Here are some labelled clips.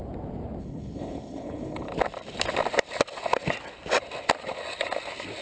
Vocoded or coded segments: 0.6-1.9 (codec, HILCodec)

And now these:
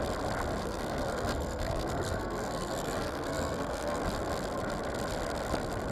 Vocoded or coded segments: 0.6-4.0 (codec, SNAC)

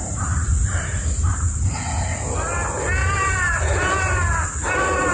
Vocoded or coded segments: 0.0-1.7 (vocoder, BigVGAN v2); 3.0-3.6

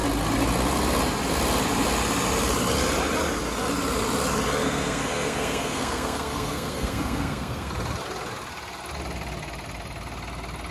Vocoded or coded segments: 4.6-7.7 (codec, SNAC)

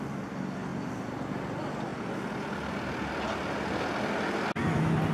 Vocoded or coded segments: none